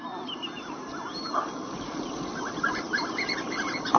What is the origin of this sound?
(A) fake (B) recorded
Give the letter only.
B